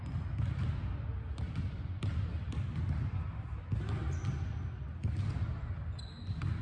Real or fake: real